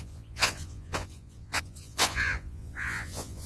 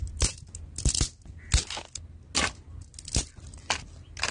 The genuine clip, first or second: second